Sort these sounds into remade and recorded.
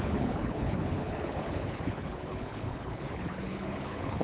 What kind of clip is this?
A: remade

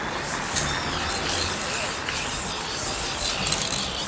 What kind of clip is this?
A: recorded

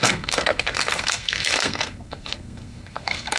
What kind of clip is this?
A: remade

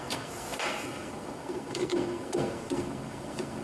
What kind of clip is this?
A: remade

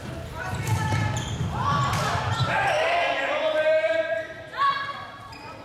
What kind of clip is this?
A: remade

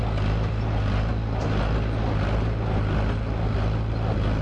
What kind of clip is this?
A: recorded